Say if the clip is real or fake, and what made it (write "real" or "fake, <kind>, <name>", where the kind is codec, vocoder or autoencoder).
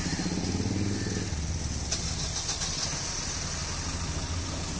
real